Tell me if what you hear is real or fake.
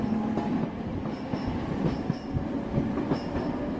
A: real